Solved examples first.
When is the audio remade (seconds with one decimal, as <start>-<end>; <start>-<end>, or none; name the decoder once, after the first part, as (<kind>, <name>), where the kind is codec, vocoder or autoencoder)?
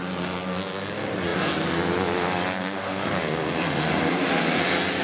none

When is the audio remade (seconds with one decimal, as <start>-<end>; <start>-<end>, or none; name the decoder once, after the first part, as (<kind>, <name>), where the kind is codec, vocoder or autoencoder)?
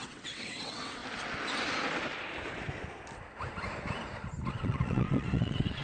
0.0-1.0 (vocoder, WaveNeXt); 4.5-5.8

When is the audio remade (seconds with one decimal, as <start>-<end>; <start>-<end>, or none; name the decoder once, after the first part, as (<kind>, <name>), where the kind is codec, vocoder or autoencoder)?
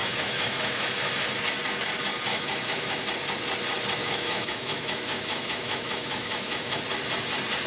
0.0-1.1 (autoencoder, DAC-VAE); 2.3-3.0; 4.0-6.8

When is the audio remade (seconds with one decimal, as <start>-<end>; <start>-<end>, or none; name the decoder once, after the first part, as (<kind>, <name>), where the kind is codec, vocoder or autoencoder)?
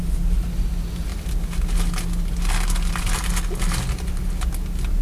none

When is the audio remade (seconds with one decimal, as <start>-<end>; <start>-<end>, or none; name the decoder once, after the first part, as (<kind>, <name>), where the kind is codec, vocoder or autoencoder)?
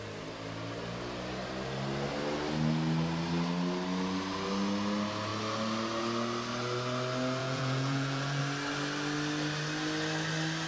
7.4-8.4 (vocoder, Vocos)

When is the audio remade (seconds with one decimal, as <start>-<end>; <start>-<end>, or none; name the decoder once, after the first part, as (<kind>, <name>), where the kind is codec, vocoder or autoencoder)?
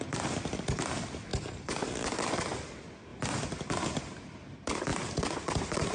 1.3-2.7 (vocoder, BigVGAN v2); 3.1-3.7; 4.9-5.9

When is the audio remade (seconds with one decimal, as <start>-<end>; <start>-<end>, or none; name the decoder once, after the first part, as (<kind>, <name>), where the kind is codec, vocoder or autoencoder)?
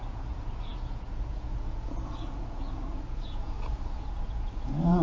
0.0-5.0 (vocoder, Vocos)